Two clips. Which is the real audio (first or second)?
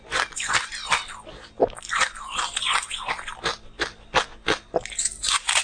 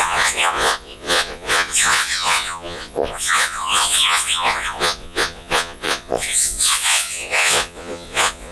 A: first